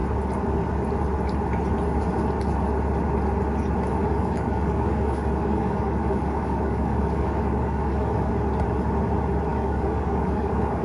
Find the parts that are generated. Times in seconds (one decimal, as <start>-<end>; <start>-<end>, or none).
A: 4.0-8.3; 9.5-10.8